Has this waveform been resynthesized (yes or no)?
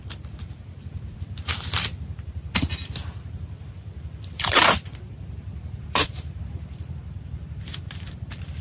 yes